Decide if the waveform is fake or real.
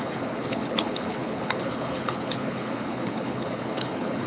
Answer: fake